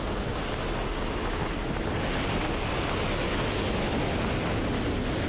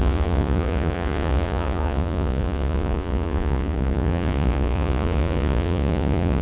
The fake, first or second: second